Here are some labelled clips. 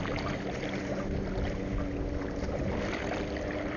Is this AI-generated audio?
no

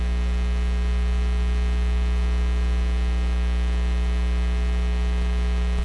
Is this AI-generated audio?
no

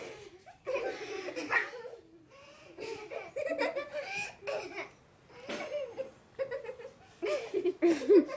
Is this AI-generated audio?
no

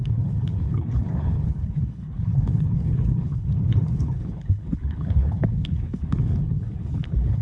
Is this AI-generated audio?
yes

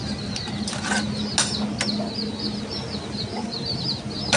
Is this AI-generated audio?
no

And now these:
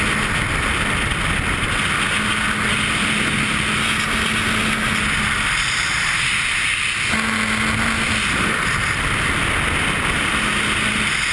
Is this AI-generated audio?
no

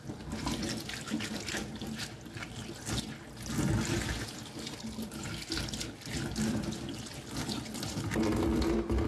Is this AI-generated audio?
no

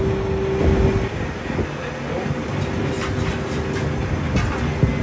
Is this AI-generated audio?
no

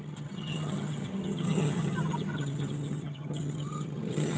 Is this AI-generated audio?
yes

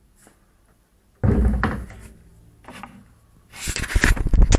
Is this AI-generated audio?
no